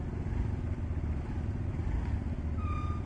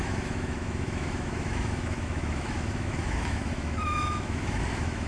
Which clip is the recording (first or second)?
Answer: first